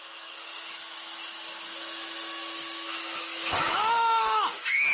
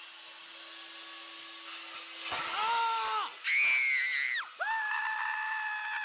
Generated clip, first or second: first